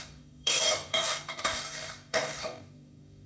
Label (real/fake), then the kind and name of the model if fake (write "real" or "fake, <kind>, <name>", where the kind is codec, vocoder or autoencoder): fake, codec, DAC